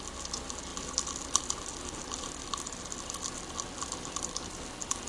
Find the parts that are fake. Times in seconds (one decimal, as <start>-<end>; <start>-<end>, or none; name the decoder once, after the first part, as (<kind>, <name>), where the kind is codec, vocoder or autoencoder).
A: none